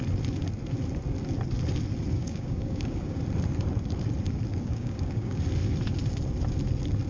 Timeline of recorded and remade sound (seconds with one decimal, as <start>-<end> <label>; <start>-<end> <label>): 0.0-2.1 recorded; 2.1-3.2 remade; 3.2-4.5 recorded; 4.5-5.4 remade; 5.4-7.1 recorded

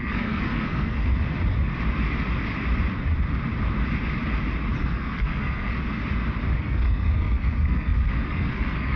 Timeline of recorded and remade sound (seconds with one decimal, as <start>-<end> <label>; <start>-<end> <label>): 0.0-1.1 remade; 1.1-4.8 recorded; 4.8-5.7 remade; 5.7-6.6 recorded; 6.6-9.0 remade

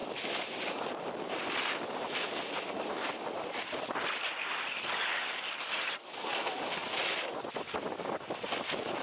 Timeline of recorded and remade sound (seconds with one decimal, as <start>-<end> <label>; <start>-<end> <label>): 0.0-9.0 recorded

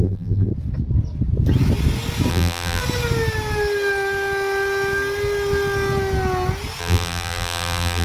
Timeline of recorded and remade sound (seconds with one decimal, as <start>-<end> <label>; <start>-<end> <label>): 0.0-0.5 remade; 0.5-2.3 recorded; 2.3-2.8 remade; 2.8-6.8 recorded; 6.8-8.0 remade